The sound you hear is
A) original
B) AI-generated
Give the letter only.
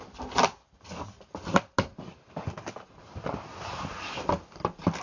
A